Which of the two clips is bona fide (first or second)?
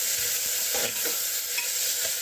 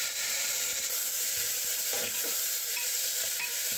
first